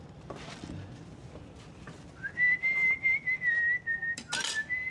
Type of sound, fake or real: real